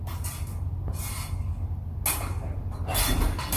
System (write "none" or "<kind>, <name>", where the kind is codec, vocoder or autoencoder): none